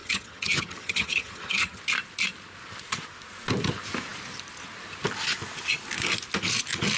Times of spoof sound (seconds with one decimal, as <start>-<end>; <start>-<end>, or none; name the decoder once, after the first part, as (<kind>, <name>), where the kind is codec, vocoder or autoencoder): 0.0-1.8 (vocoder, HiFi-GAN)